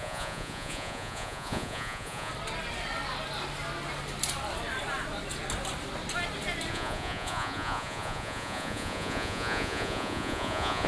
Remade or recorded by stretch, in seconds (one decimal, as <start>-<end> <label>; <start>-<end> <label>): 0.0-2.3 remade; 2.3-6.7 recorded; 6.7-10.9 remade